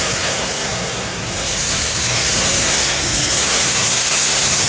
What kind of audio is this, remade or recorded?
remade